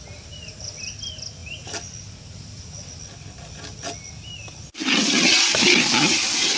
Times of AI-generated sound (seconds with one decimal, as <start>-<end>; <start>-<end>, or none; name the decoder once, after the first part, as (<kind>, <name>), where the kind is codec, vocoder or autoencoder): none